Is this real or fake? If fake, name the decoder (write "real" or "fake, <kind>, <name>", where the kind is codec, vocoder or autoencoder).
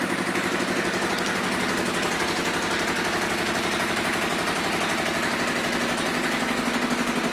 real